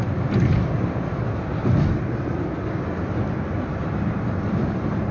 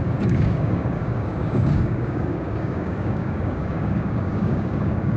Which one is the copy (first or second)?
second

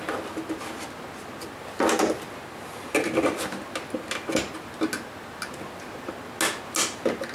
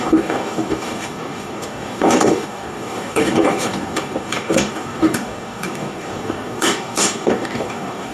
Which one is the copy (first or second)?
second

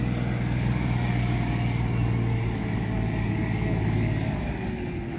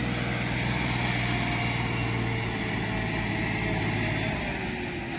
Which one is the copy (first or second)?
first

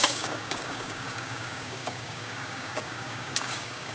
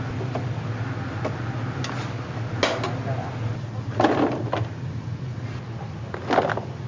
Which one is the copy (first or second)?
first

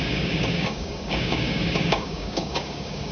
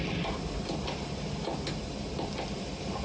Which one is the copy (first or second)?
first